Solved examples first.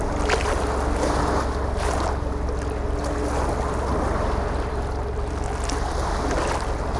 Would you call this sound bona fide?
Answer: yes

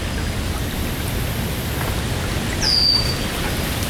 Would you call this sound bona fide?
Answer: yes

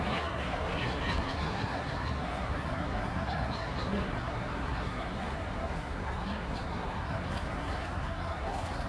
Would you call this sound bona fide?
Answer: no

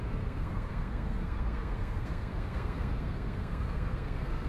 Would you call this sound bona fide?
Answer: no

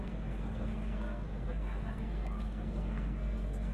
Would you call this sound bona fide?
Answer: no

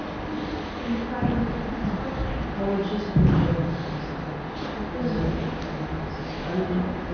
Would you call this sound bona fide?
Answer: yes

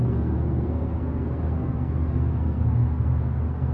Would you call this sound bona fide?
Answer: no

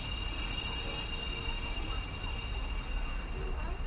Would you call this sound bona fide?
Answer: yes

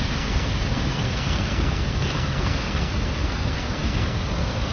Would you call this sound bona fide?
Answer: no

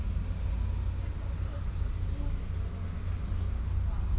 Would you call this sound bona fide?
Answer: yes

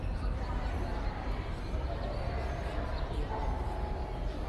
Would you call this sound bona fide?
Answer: yes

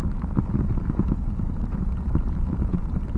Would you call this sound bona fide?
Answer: yes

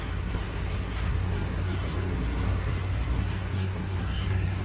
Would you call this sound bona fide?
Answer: no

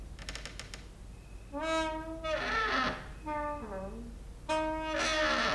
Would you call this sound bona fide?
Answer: yes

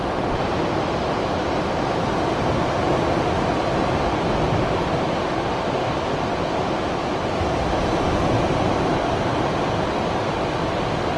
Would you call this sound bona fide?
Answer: yes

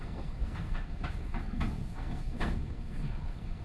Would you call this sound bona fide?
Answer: no